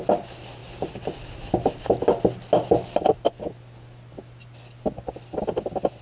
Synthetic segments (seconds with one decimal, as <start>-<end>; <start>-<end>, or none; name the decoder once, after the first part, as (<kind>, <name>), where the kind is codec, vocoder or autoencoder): none